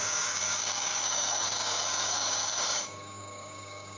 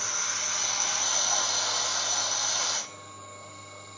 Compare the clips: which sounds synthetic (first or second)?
first